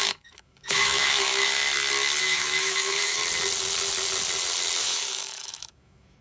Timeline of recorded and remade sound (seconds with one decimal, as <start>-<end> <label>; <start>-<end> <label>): 0.0-1.6 remade; 1.6-2.2 recorded; 2.2-3.2 remade; 3.2-4.8 recorded; 4.8-6.2 remade